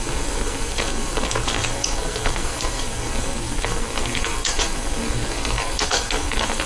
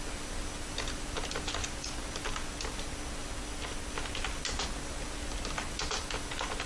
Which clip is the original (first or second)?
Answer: second